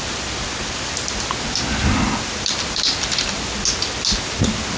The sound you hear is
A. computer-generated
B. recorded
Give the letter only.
B